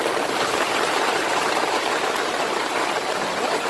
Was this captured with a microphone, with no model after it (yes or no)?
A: no